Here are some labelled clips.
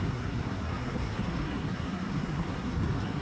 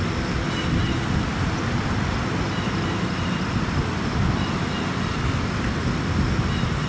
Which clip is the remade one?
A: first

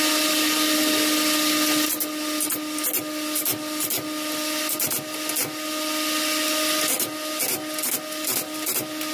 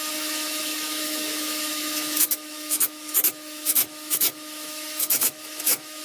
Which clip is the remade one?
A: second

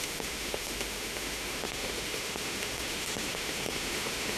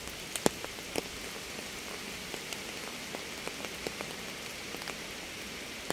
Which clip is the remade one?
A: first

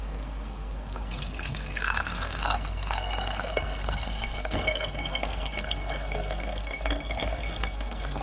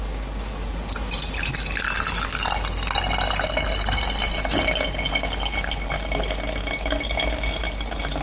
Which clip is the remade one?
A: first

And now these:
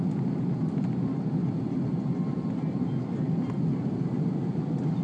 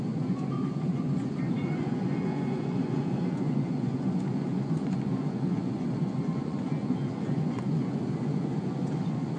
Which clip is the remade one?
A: second